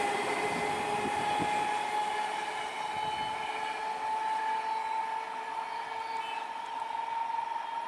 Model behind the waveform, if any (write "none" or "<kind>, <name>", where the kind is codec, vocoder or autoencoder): none